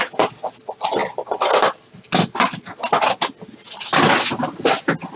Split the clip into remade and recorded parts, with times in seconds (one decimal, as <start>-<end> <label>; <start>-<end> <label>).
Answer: 0.0-5.2 recorded